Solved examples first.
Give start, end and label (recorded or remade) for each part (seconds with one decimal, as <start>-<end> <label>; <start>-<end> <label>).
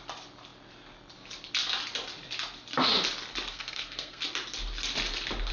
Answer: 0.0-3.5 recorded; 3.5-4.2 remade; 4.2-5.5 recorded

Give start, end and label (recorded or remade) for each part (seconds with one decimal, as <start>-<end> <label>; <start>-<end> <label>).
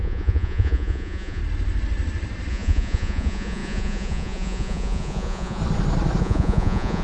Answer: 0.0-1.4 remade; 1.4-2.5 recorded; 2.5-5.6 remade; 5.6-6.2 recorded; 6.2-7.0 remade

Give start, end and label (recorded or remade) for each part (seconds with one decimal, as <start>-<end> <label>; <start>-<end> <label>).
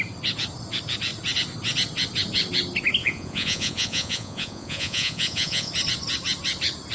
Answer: 0.0-3.0 recorded; 3.0-5.7 remade; 5.7-6.9 recorded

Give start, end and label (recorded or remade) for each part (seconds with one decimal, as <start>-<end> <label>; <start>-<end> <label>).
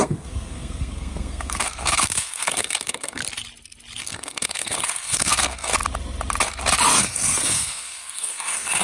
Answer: 0.0-3.2 remade; 3.2-4.0 recorded; 4.0-5.7 remade; 5.7-7.0 recorded; 7.0-8.8 remade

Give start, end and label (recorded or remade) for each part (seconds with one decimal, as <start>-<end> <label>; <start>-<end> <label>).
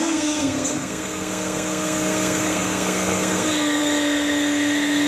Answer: 0.0-5.1 remade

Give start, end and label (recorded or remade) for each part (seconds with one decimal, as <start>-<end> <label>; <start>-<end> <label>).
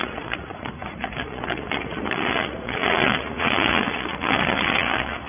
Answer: 0.0-5.3 remade